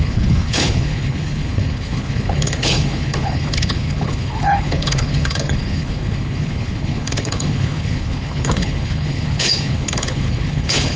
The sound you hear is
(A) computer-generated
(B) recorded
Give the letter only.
A